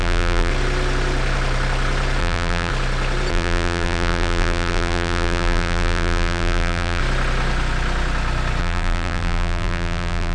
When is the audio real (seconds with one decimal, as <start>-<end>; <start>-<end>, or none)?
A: 0.5-2.2; 2.7-3.3; 7.0-8.6